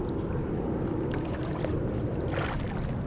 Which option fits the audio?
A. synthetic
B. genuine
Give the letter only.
B